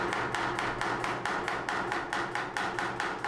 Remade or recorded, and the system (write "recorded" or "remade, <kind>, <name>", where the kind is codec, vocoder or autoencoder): recorded